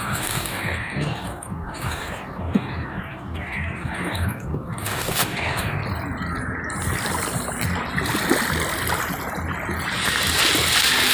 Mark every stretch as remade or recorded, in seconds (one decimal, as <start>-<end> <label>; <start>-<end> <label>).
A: 0.0-5.8 remade; 5.8-11.1 recorded